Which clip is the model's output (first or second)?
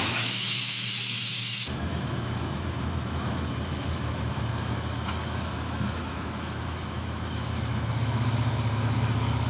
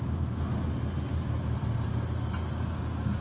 first